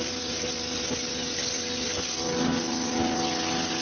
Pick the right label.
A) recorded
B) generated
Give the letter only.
A